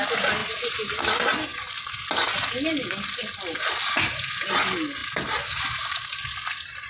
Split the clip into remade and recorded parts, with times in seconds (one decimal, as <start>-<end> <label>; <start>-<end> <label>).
0.0-0.4 recorded; 0.4-1.0 remade; 1.0-1.5 recorded; 1.5-2.0 remade; 2.0-5.0 recorded; 5.0-6.3 remade; 6.3-6.9 recorded